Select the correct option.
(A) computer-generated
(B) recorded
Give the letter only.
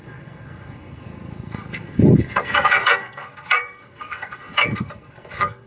A